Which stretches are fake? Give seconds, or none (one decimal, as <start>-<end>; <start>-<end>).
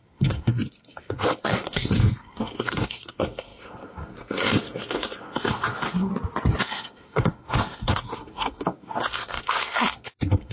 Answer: 0.0-6.1; 6.6-10.5